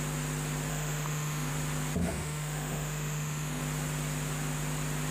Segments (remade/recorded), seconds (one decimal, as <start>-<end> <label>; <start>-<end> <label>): 0.0-0.7 recorded; 0.7-1.5 remade; 1.5-2.0 recorded; 2.0-3.6 remade; 3.6-5.1 recorded